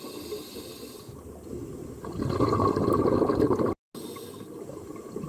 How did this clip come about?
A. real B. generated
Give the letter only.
A